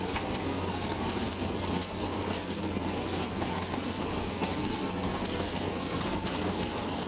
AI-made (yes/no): yes